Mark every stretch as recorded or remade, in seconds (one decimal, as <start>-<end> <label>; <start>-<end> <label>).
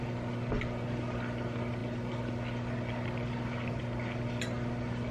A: 0.0-5.1 recorded